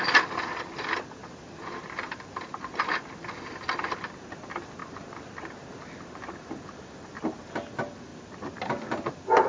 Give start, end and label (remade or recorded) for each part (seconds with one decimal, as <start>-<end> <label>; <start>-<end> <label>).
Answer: 0.0-1.2 recorded; 1.2-2.8 remade; 2.8-4.8 recorded; 4.8-6.5 remade; 6.5-8.1 recorded; 8.1-9.1 remade; 9.1-9.5 recorded